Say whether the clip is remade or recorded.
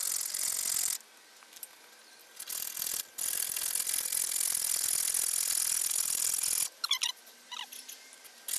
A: recorded